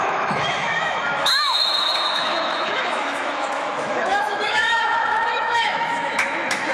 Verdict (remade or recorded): remade